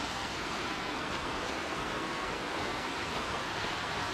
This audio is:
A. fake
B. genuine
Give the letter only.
A